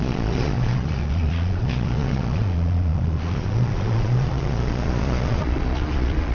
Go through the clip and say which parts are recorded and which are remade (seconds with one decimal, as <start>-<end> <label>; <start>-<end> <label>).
0.0-6.3 remade